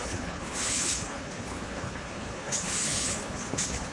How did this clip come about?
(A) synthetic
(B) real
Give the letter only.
A